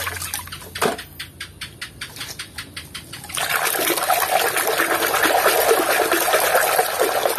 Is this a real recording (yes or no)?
yes